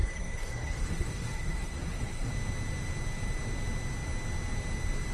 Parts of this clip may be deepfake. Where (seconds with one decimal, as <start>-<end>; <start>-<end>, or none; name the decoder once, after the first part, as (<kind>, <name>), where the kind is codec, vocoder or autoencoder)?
0.0-2.3 (codec, SNAC)